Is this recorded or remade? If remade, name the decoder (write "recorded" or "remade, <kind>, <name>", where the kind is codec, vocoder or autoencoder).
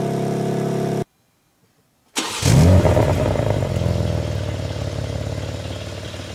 recorded